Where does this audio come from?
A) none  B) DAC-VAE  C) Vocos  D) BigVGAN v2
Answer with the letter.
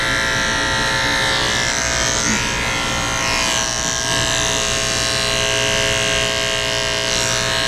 A